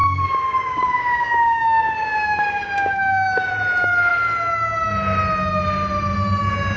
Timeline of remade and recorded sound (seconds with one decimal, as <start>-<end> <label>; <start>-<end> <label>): 0.0-3.5 remade; 3.5-6.8 recorded